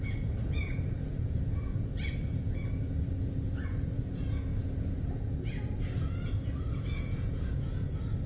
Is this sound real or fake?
fake